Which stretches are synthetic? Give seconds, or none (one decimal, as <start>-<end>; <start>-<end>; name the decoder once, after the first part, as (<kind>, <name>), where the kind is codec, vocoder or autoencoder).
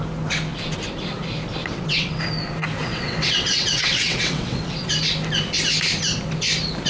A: 1.6-2.2 (vocoder, WaveNeXt); 2.8-4.9